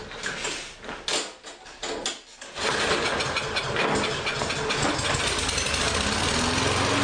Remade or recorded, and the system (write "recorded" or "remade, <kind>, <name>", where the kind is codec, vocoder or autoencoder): recorded